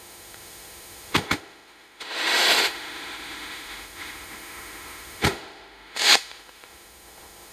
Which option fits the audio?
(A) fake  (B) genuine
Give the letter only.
A